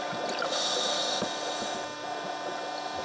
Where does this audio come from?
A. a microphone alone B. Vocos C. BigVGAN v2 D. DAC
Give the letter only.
A